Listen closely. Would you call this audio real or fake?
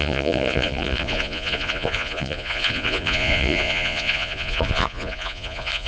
fake